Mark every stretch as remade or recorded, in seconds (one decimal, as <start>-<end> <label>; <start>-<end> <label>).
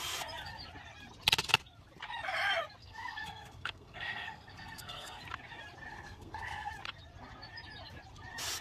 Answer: 0.0-2.8 recorded; 2.8-5.2 remade; 5.2-5.9 recorded; 5.9-6.7 remade; 6.7-8.6 recorded